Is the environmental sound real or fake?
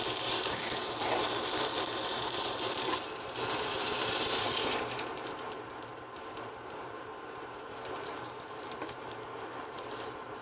fake